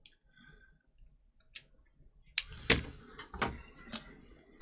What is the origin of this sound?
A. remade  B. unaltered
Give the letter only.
B